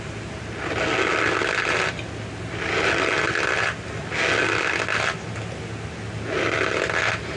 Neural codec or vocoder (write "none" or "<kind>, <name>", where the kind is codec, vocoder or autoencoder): none